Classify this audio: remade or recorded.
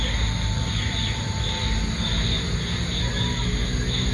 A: recorded